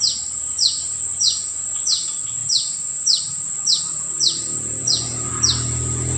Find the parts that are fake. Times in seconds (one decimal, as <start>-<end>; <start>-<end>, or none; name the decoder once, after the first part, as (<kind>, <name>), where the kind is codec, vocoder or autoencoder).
0.5-1.9 (vocoder, Vocos); 4.8-5.3

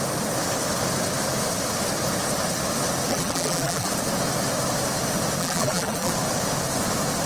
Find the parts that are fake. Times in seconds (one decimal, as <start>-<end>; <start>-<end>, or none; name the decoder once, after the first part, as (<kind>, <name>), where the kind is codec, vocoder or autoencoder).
3.1-3.9 (vocoder, BigVGAN v2); 5.4-6.1

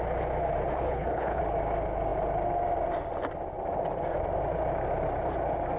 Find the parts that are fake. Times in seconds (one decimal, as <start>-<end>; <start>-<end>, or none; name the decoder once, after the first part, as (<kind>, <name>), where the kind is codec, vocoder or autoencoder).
0.7-1.4 (codec, HILCodec)